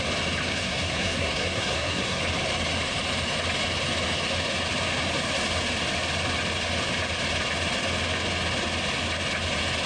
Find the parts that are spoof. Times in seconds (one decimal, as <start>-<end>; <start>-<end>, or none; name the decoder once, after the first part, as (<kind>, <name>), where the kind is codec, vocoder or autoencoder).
0.5-2.2 (codec, SNAC)